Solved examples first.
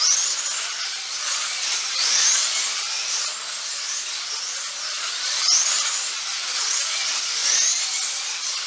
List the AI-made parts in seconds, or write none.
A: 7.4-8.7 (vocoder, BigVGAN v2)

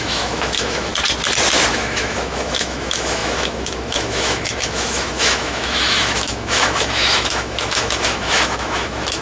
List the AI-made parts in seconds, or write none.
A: 0.0-0.9 (autoencoder, DAC-VAE); 1.7-9.2

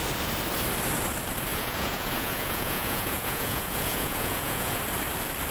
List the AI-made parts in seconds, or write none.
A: 1.5-4.8 (vocoder, Vocos)

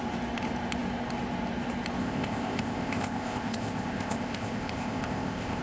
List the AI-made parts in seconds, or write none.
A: 2.0-5.6 (codec, ZipCodec)

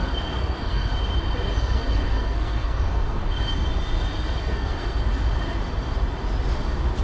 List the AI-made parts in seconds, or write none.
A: 0.0-0.9 (codec, SNAC); 1.6-3.2; 4.4-5.0

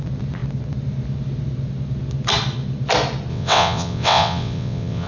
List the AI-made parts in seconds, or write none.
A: 3.3-5.1 (vocoder, WaveNeXt)

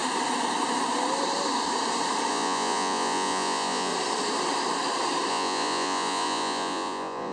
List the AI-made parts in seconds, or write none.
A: 2.3-3.9 (vocoder, Vocos); 5.3-7.3